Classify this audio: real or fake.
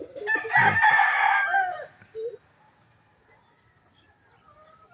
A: real